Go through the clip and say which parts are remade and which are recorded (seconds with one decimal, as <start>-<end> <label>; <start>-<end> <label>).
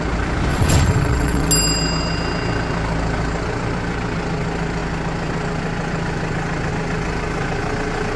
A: 0.0-0.5 recorded; 0.5-1.5 remade; 1.5-8.2 recorded